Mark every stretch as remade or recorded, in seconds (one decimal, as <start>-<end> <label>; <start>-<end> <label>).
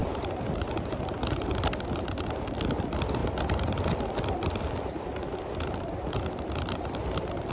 0.0-7.5 remade